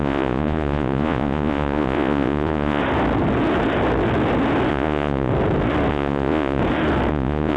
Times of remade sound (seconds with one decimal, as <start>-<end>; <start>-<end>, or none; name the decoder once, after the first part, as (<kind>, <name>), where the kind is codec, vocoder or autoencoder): 0.0-2.8 (vocoder, Vocos); 4.7-5.3; 5.9-6.6; 7.1-7.6